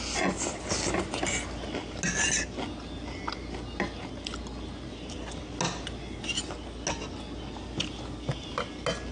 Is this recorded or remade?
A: recorded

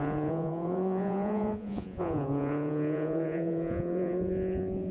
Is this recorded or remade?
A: remade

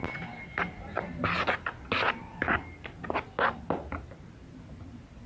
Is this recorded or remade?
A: recorded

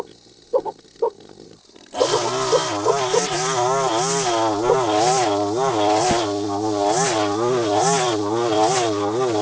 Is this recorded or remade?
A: recorded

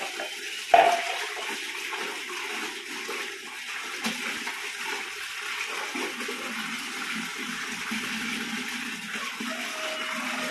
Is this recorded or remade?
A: recorded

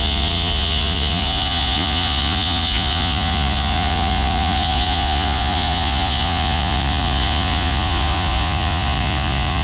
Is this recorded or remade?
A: remade